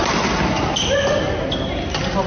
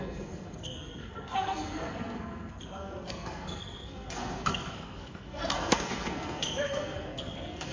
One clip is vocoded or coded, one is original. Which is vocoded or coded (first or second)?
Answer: second